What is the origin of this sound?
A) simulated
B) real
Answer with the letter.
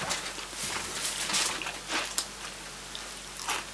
B